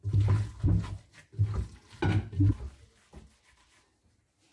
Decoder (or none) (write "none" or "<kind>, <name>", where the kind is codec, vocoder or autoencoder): none